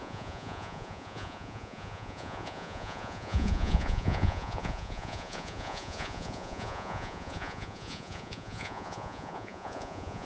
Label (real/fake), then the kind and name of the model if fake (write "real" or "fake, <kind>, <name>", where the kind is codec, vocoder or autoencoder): fake, vocoder, Vocos